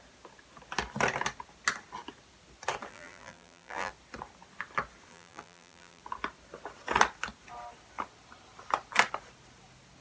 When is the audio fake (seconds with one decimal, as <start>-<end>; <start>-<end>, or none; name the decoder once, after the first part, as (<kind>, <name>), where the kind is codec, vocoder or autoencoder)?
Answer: 2.9-3.9 (vocoder, BigVGAN v2); 5.1-6.0